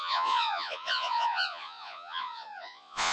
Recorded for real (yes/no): no